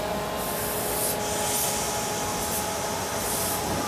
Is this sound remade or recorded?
recorded